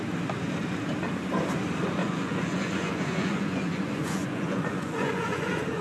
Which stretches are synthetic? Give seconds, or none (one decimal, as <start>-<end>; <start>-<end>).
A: 2.0-5.8